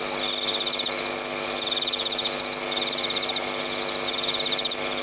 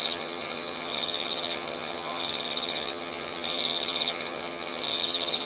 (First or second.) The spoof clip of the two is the second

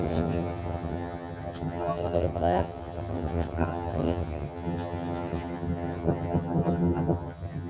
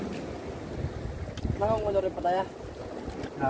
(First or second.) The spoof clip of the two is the first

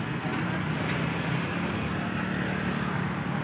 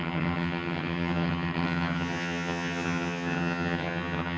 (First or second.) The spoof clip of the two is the second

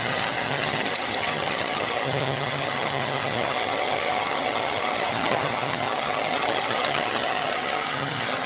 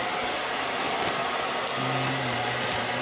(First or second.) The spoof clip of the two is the first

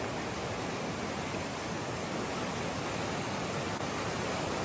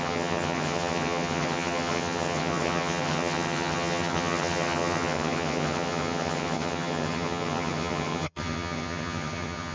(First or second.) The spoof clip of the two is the second